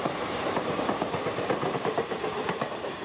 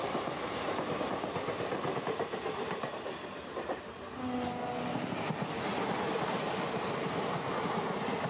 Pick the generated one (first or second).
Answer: first